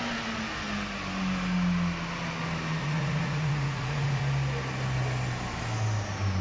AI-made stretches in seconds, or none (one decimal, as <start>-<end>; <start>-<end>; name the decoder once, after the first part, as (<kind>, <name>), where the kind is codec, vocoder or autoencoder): 2.8-4.2 (vocoder, Vocos)